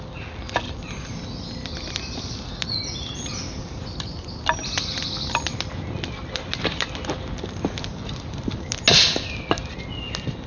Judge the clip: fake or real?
real